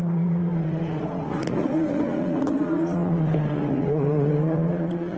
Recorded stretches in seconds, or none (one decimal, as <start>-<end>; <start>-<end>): none